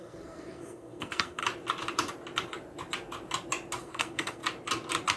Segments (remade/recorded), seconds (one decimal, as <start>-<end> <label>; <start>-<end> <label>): 0.0-1.4 remade; 1.4-3.8 recorded; 3.8-4.4 remade; 4.4-5.2 recorded

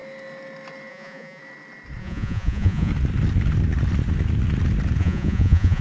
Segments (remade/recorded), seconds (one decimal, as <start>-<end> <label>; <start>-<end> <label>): 0.0-0.9 recorded; 0.9-1.4 remade; 1.4-2.0 recorded; 2.0-2.9 remade; 2.9-5.0 recorded; 5.0-5.8 remade

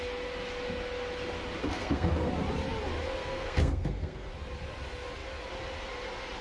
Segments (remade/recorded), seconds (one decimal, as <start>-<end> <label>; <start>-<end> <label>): 0.0-1.6 recorded; 1.6-2.3 remade; 2.3-3.2 recorded; 3.2-4.3 remade; 4.3-6.4 recorded

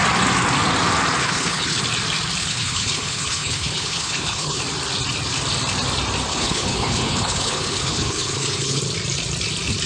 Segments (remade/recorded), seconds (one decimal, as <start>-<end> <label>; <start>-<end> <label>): 0.0-1.2 recorded; 1.2-1.8 remade; 1.8-2.4 recorded; 2.4-4.6 remade; 4.6-6.3 recorded; 6.3-8.8 remade; 8.8-9.9 recorded